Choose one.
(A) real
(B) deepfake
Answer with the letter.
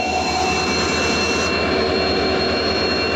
A